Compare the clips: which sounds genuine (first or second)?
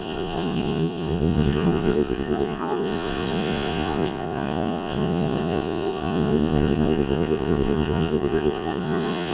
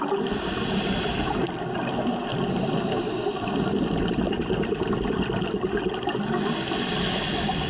second